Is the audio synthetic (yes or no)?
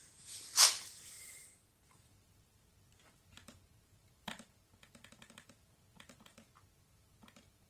yes